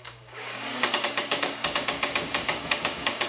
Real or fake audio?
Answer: fake